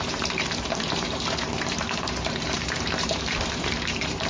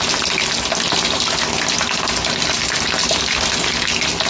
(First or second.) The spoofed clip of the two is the first